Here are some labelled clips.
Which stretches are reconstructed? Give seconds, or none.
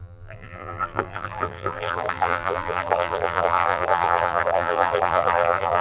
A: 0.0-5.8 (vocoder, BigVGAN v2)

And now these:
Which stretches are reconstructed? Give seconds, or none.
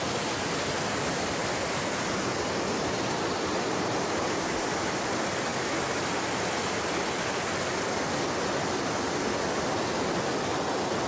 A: none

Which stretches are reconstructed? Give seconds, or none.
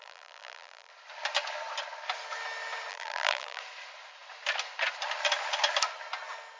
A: 0.0-0.9 (vocoder, BigVGAN v2); 2.9-3.6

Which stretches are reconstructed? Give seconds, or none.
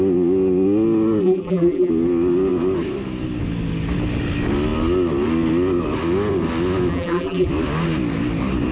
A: 1.2-1.9 (vocoder, BigVGAN v2); 6.9-7.5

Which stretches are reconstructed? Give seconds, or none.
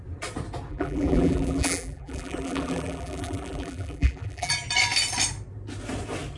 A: 0.7-4.5 (vocoder, BigVGAN v2)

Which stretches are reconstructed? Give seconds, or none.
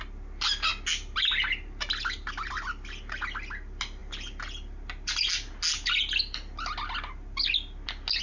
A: none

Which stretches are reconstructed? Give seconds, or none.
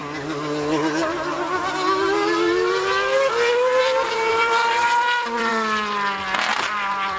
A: 4.3-5.5 (vocoder, BigVGAN v2); 6.5-7.2